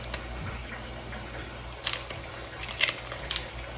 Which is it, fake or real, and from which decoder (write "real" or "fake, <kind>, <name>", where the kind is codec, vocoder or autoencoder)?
real